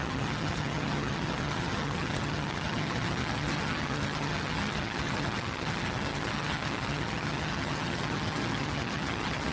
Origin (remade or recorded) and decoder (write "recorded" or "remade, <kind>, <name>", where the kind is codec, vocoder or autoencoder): remade, vocoder, HiFi-GAN